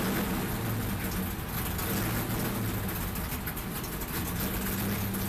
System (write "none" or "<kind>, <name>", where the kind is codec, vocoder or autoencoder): none